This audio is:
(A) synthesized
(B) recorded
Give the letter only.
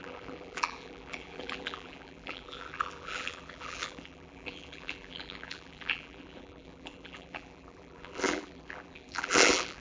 A